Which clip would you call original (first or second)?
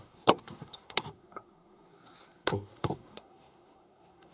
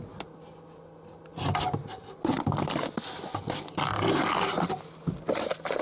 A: second